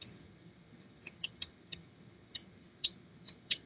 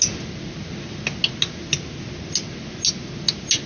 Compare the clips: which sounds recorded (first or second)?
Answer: second